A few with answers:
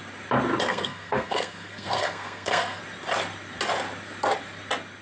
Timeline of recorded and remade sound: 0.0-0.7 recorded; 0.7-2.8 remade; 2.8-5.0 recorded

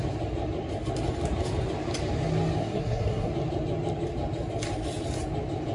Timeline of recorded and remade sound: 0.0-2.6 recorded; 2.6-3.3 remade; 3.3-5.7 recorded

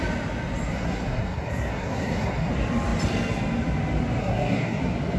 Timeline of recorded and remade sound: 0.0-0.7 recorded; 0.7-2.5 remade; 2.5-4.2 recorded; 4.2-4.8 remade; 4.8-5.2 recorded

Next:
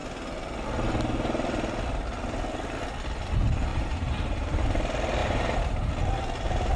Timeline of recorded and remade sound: 0.0-3.7 recorded; 3.7-4.6 remade; 4.6-5.2 recorded; 5.2-5.9 remade; 5.9-6.8 recorded

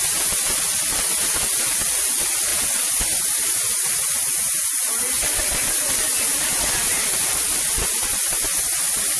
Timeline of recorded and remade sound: 0.0-9.2 recorded